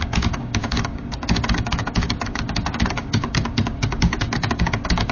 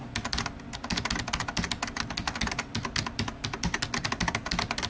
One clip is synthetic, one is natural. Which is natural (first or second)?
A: second